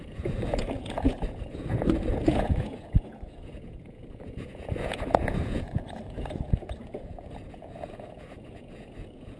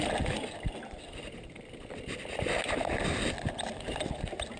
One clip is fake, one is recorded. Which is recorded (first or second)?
second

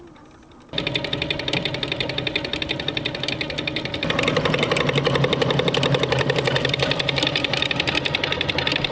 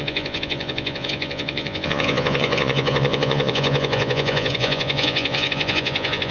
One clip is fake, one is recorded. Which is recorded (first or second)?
first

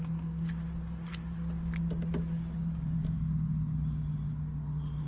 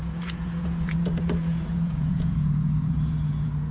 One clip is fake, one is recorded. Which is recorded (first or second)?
first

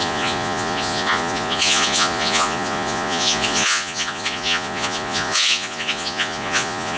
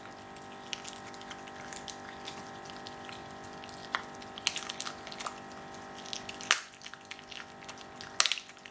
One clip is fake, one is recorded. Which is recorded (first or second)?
second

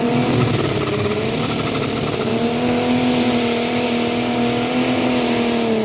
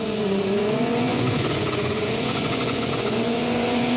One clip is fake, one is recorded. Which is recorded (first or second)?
first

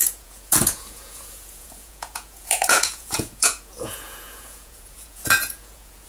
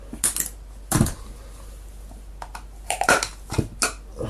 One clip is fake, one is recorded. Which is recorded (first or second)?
second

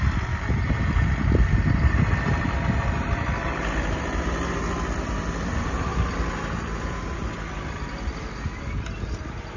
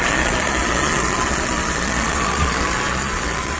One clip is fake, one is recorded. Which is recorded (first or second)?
first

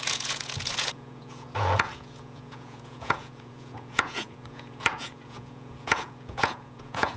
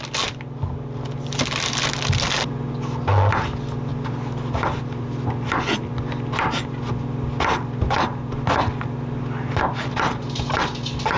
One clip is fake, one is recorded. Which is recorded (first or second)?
second